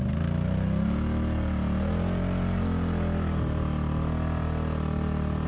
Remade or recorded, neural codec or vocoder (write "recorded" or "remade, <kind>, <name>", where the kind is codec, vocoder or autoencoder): recorded